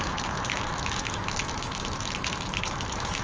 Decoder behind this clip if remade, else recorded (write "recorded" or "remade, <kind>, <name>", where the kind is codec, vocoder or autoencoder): remade, autoencoder, DAC-VAE